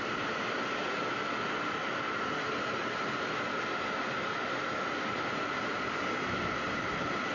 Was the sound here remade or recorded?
recorded